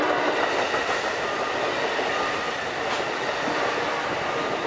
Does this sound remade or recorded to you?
remade